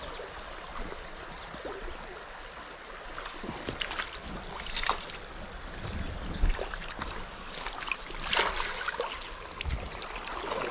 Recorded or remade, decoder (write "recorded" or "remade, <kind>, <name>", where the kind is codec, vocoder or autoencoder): recorded